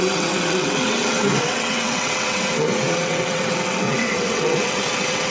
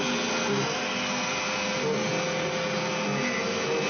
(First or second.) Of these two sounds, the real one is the second